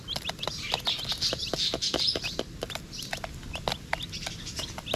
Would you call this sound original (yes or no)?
yes